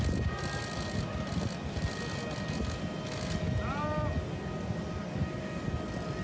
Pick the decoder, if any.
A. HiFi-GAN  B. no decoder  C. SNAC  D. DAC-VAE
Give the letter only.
B